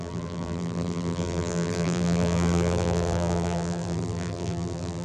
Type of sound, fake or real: fake